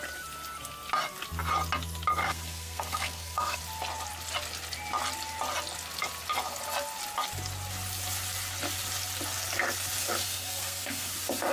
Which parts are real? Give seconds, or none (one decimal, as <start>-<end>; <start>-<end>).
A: 0.0-2.2; 3.6-10.2; 11.1-11.5